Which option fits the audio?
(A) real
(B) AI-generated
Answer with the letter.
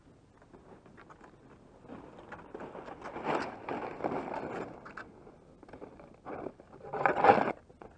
A